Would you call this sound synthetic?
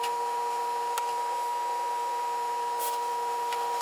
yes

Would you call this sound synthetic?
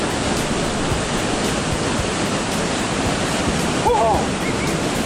no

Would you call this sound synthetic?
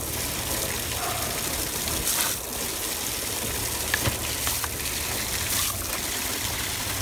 no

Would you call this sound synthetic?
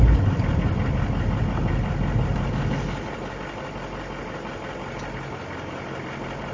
no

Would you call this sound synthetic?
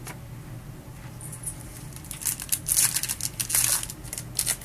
no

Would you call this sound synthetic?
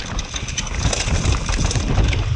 no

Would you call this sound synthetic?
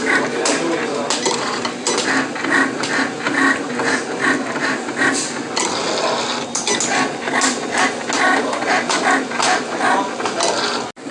no